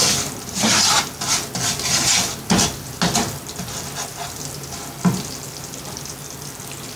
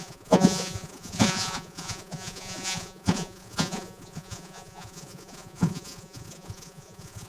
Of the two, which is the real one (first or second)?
first